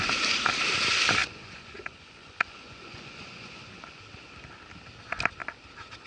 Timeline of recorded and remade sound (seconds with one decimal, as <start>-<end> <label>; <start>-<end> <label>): 0.0-1.2 recorded; 1.2-4.0 remade; 4.0-6.1 recorded

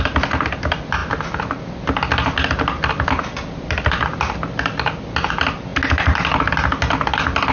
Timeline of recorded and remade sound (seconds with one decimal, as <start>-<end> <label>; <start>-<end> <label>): 0.0-7.5 recorded

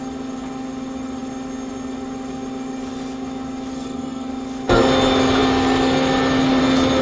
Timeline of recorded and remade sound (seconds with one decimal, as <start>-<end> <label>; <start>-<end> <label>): 0.0-3.7 recorded; 3.7-4.3 remade; 4.3-7.0 recorded

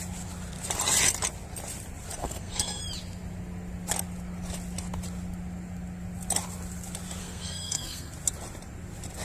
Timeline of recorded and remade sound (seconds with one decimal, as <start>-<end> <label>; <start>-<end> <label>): 0.0-2.2 recorded; 2.2-2.8 remade; 2.8-7.2 recorded; 7.2-8.1 remade; 8.1-9.2 recorded

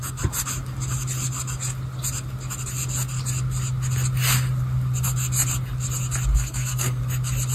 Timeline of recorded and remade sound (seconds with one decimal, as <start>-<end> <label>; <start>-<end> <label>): 0.0-6.3 recorded; 6.3-7.0 remade; 7.0-7.5 recorded